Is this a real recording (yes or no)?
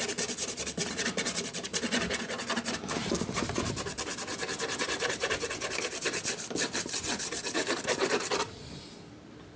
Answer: no